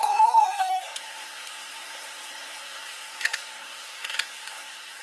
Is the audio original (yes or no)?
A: no